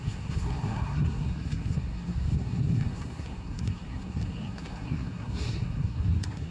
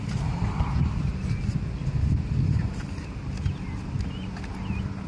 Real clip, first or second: second